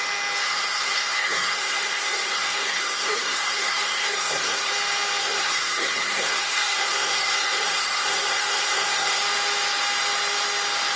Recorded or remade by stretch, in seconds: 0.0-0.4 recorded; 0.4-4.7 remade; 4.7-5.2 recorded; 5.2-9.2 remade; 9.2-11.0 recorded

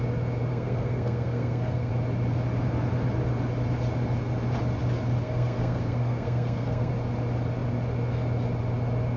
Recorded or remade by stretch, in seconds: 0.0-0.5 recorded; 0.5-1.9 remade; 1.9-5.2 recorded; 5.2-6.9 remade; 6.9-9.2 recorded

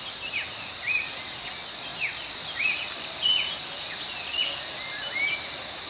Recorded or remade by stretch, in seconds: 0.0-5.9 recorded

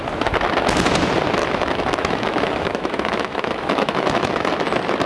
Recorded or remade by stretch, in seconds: 0.0-1.4 recorded; 1.4-4.5 remade; 4.5-5.1 recorded

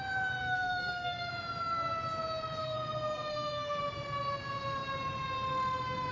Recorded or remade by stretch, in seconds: 0.0-0.4 recorded; 0.4-1.3 remade; 1.3-2.6 recorded; 2.6-3.8 remade; 3.8-6.1 recorded

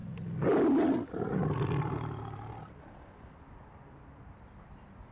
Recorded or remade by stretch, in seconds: 0.0-5.1 recorded

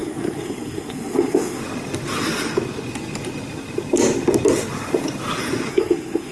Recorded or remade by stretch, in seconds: 0.0-1.6 remade; 1.6-5.7 recorded; 5.7-6.3 remade

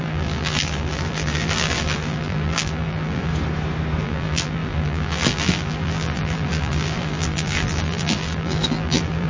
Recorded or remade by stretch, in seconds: 0.0-3.3 remade; 3.3-4.0 recorded; 4.0-9.3 remade